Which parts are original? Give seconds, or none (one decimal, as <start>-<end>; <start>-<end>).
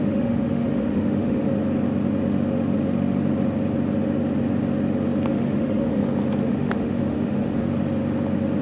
1.5-5.3; 6.0-6.5; 7.6-8.6